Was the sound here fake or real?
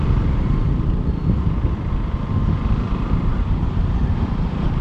fake